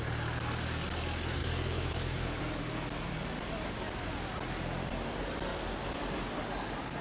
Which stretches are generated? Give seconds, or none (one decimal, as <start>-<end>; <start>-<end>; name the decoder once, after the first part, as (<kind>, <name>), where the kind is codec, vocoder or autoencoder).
1.4-2.4 (autoencoder, DAC-VAE)